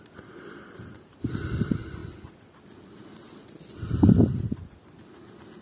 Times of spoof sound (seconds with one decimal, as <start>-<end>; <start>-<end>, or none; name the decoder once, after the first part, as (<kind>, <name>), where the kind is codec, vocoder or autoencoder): 0.0-2.0 (vocoder, BigVGAN v2)